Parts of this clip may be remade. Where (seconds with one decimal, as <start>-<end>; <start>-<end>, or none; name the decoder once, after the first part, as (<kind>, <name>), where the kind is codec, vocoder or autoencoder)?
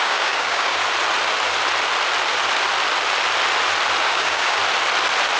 0.0-0.8 (codec, DAC); 4.0-4.6